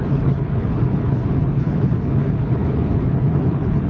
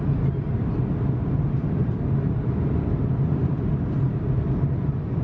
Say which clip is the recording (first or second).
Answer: second